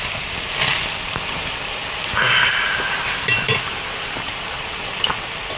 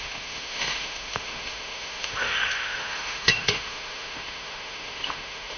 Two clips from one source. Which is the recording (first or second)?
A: first